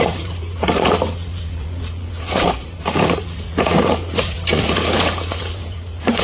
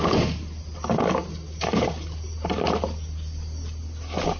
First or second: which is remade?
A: first